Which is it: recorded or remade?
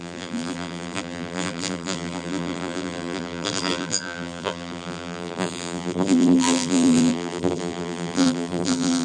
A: remade